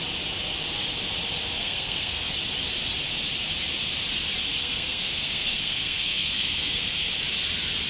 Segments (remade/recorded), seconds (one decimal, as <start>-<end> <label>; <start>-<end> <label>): 0.0-1.6 recorded; 1.6-2.3 remade; 2.3-4.6 recorded; 4.6-7.1 remade; 7.1-7.9 recorded